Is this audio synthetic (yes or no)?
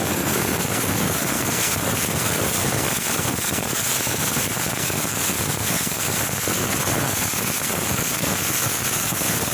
yes